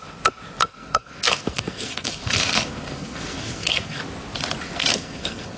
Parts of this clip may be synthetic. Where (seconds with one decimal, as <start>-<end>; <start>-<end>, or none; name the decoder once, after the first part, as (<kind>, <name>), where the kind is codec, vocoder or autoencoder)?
0.6-4.0 (codec, SNAC); 4.6-5.6